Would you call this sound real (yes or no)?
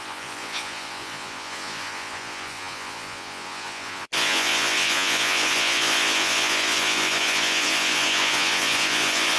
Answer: no